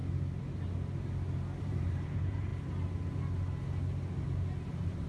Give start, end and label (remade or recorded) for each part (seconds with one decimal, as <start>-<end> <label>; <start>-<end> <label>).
0.0-1.6 recorded; 1.6-2.5 remade; 2.5-4.6 recorded; 4.6-5.1 remade